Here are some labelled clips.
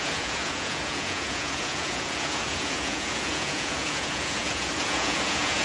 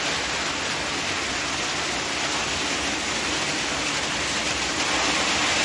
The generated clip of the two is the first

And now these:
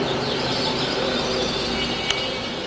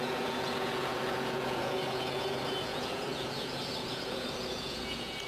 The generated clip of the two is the second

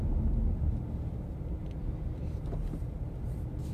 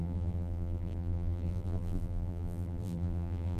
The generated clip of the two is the second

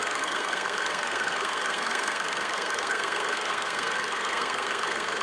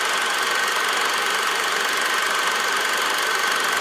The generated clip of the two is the first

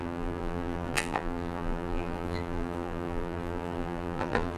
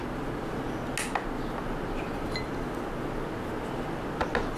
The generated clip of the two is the first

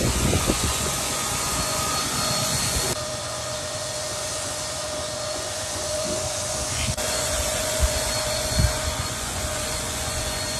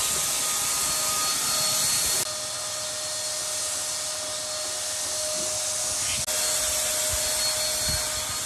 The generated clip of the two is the first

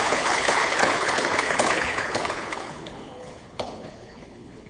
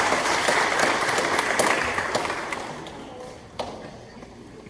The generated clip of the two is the first